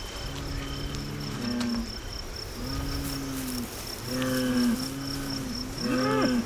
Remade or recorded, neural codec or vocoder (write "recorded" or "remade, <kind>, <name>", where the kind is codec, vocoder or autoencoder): recorded